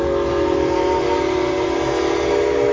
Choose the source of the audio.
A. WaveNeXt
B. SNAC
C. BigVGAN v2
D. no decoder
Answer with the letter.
D